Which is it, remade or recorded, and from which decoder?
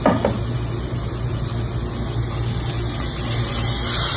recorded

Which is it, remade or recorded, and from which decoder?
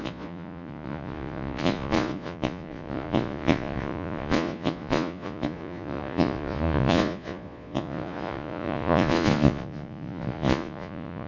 remade, vocoder, Vocos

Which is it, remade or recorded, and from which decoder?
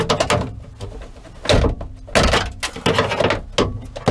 recorded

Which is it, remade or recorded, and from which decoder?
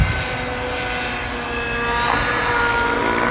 recorded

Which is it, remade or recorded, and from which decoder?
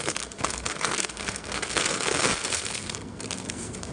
remade, codec, SNAC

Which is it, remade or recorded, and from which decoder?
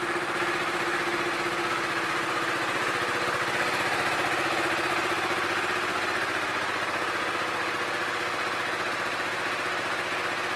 recorded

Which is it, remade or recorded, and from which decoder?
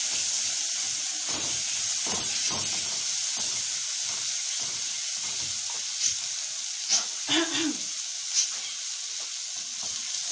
recorded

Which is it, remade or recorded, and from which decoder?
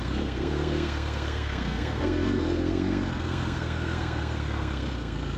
remade, codec, SNAC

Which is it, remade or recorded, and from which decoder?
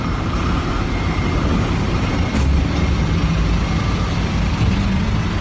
recorded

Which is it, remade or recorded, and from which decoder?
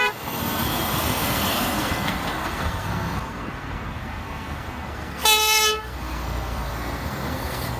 remade, codec, SNAC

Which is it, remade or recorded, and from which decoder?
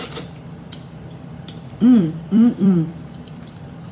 remade, vocoder, BigVGAN v2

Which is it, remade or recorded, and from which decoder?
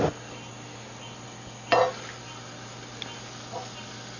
recorded